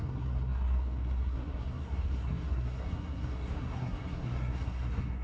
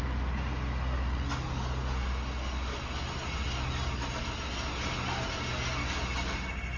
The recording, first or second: second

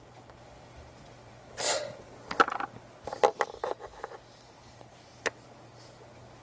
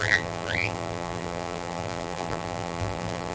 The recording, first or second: first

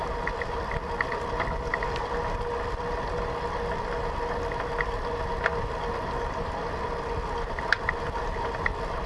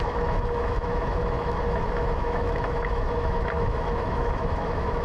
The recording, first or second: first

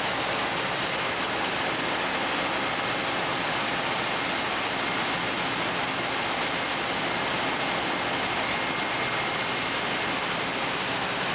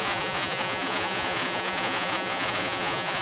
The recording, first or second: first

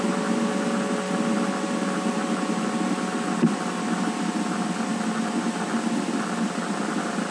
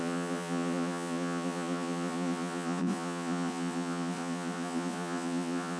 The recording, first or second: first